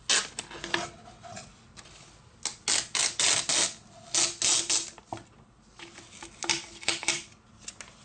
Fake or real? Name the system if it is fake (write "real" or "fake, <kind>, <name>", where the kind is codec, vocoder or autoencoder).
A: real